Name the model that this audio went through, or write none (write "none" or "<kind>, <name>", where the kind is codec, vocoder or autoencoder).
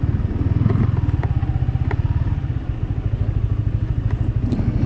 none